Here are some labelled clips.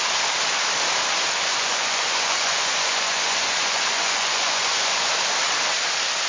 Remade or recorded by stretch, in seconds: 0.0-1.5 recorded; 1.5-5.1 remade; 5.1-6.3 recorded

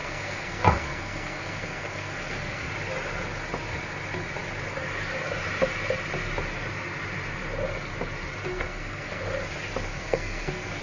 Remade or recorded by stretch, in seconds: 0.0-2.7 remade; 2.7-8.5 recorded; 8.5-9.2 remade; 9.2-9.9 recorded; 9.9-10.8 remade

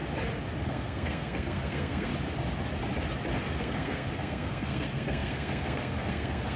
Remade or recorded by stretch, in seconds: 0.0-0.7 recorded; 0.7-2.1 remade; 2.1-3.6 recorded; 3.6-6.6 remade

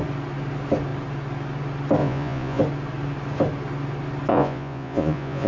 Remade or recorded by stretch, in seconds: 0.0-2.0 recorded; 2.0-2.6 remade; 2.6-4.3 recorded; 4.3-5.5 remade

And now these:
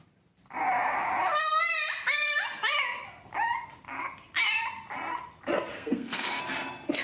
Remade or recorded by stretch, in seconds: 0.0-5.7 recorded; 5.7-6.4 remade; 6.4-7.0 recorded

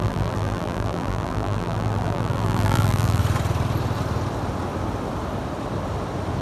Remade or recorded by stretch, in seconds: 0.0-3.2 remade; 3.2-6.4 recorded